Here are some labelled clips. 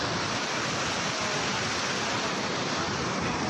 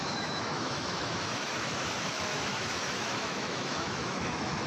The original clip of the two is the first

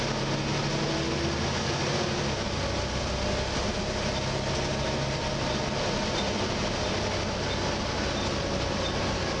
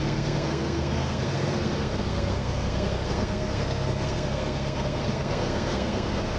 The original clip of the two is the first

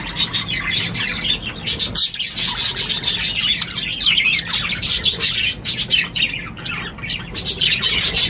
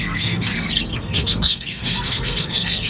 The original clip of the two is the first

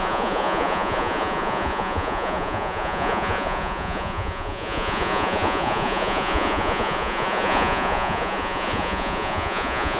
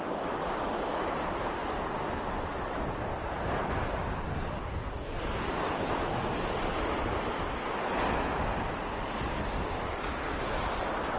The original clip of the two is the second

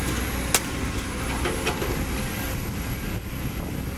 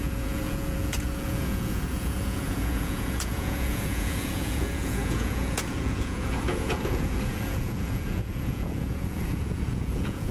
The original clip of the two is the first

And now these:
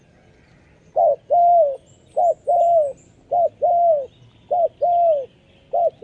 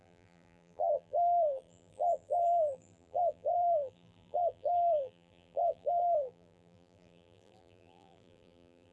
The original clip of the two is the first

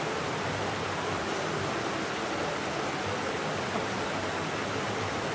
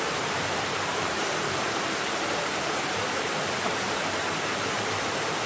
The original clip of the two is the first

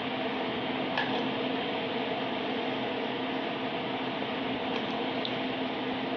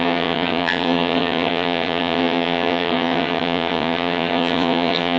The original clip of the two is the first